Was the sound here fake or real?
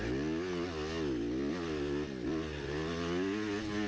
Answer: real